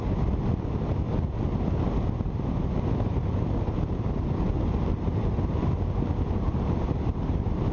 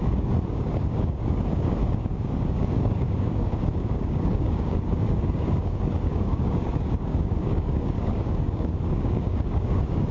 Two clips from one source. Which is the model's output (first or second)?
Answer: second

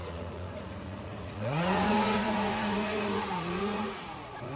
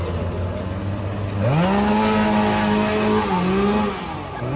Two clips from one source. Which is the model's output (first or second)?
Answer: first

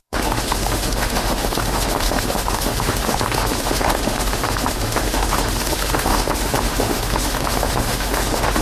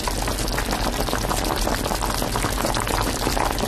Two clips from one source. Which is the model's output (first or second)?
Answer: first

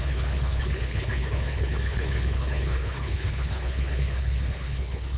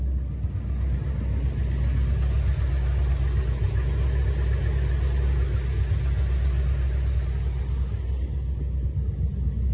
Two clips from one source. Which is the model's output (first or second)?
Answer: first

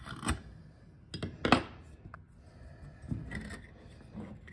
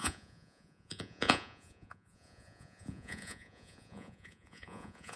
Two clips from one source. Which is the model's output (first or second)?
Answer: second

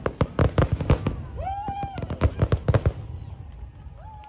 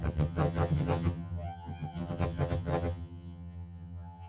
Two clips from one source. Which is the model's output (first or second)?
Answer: second